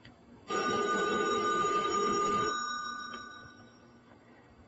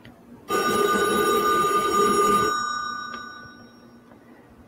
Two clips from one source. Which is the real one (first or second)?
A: second